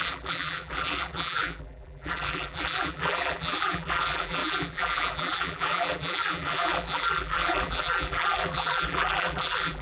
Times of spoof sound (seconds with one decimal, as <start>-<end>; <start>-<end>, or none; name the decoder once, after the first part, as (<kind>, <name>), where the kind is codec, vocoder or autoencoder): 0.0-9.8 (vocoder, BigVGAN v2)